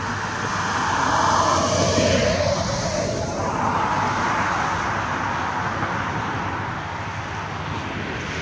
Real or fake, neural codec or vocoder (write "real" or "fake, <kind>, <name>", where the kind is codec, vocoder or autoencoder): real